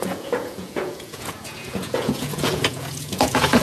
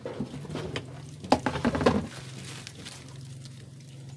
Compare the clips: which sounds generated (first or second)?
first